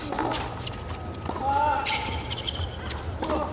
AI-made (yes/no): no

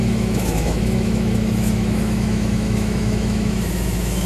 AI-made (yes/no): yes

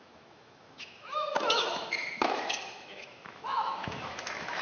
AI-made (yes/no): yes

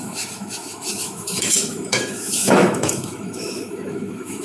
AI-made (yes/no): yes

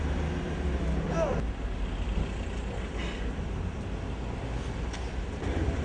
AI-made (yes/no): no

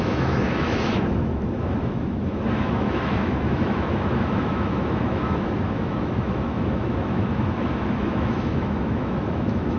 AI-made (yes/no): yes